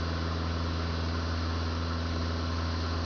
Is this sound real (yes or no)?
yes